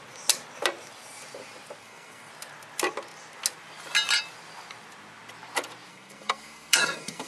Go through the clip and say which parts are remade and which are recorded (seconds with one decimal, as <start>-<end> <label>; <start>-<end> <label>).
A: 0.0-1.8 recorded; 1.8-2.3 remade; 2.3-5.9 recorded; 5.9-7.3 remade